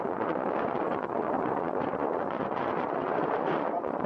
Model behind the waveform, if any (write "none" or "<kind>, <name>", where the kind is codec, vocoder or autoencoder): vocoder, Vocos